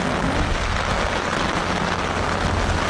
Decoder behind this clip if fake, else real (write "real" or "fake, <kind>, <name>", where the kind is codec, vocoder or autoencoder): real